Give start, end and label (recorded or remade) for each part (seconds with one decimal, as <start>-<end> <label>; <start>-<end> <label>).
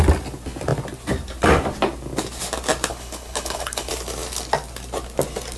0.0-2.9 recorded; 2.9-3.9 remade; 3.9-5.6 recorded